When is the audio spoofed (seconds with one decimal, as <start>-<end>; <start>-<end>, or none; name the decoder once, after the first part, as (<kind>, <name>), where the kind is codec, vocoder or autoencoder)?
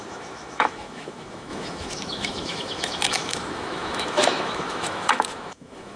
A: 0.0-6.0 (autoencoder, DAC-VAE)